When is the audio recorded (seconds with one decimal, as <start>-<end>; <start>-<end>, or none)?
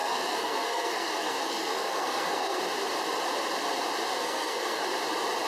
2.6-4.1; 4.8-5.5